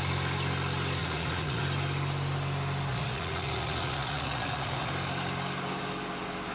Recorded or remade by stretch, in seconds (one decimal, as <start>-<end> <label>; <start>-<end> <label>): 0.0-1.0 recorded; 1.0-1.6 remade; 1.6-2.9 recorded; 2.9-4.9 remade; 4.9-6.5 recorded